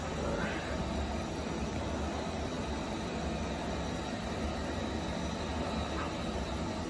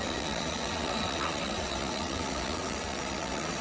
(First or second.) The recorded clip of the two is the first